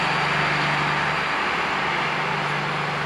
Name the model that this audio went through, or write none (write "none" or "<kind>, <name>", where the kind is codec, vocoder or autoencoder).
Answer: none